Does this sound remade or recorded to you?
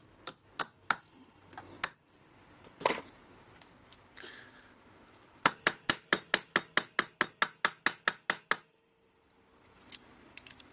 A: recorded